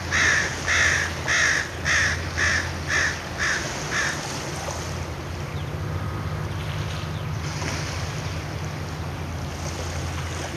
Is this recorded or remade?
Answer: recorded